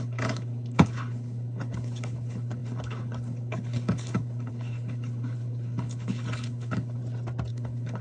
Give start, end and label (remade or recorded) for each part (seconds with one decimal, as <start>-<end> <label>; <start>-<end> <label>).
0.0-7.0 remade; 7.0-7.5 recorded; 7.5-8.0 remade